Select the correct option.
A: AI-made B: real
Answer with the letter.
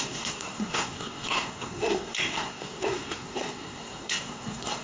A